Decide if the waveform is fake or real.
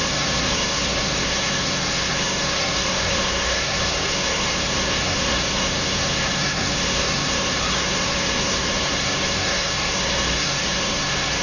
fake